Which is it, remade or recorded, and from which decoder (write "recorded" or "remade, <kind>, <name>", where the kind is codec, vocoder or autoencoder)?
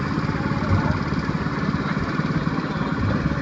recorded